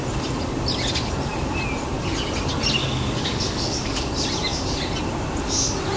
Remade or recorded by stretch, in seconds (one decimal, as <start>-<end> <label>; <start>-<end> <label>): 0.0-2.8 recorded; 2.8-4.1 remade; 4.1-6.0 recorded